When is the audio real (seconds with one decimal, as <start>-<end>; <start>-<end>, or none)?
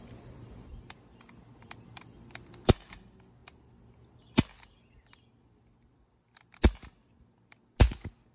0.0-8.3